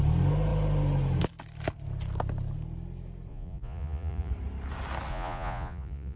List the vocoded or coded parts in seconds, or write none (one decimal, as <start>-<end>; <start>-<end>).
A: 3.3-4.3; 5.1-6.2